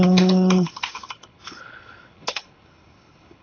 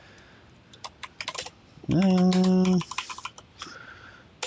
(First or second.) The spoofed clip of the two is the first